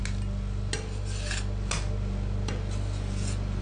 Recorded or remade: recorded